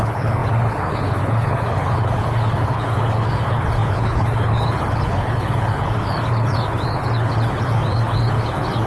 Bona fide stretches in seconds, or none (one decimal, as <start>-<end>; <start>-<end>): none